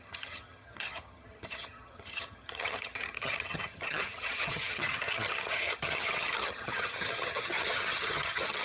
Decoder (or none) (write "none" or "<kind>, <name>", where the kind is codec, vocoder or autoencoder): vocoder, HiFi-GAN